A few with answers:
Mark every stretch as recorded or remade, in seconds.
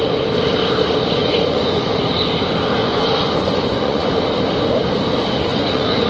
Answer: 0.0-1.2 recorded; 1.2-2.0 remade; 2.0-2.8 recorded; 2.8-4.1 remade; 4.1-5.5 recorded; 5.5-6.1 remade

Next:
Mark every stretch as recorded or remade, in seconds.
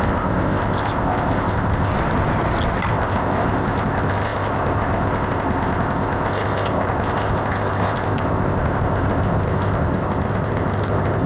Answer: 0.0-1.9 remade; 1.9-2.9 recorded; 2.9-11.3 remade